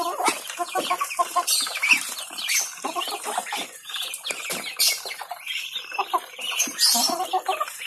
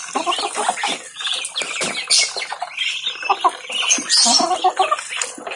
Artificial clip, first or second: first